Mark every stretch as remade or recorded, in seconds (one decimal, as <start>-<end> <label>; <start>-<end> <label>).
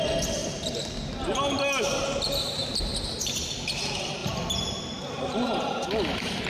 0.0-4.2 recorded; 4.2-6.5 remade